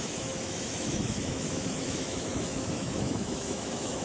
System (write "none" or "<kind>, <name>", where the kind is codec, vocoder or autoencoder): autoencoder, DAC-VAE